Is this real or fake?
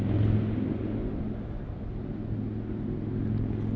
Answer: real